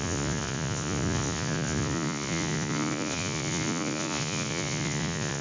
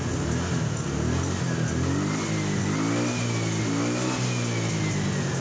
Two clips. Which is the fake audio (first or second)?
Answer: first